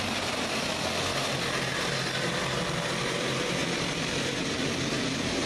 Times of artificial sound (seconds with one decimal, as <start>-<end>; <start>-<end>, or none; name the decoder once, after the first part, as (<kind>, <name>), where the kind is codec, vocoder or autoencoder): none